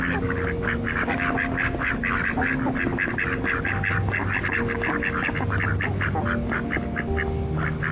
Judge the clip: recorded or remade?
recorded